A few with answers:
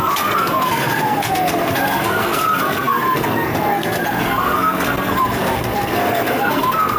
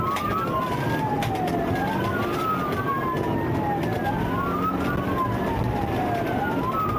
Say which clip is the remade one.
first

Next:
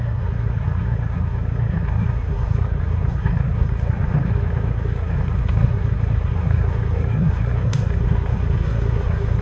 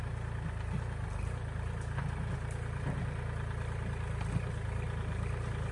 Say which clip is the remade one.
first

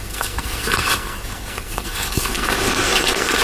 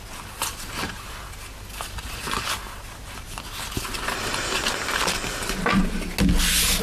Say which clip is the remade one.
first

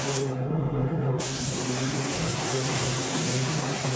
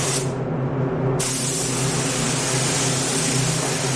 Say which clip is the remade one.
first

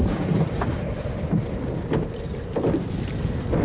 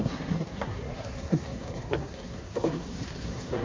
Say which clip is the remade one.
second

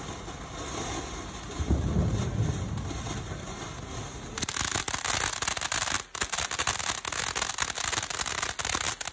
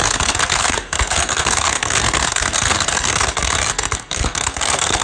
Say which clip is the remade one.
second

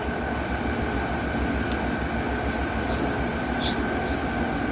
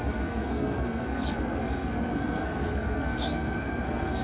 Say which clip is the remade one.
second